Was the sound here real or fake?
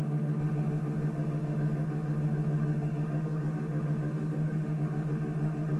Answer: fake